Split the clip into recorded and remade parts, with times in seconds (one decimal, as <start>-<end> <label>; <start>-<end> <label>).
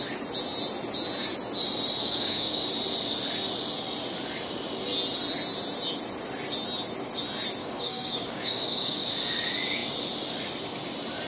0.0-2.0 recorded; 2.0-2.6 remade; 2.6-7.6 recorded; 7.6-9.1 remade; 9.1-11.3 recorded